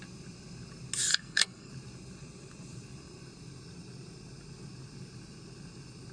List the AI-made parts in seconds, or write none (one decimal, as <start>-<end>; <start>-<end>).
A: 1.1-1.7